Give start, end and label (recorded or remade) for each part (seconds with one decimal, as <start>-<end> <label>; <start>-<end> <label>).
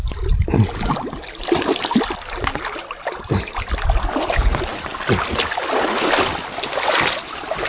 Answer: 0.0-7.7 recorded